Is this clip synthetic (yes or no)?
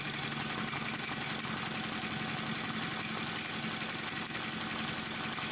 no